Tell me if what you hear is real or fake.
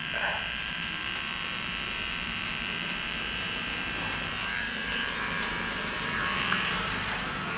fake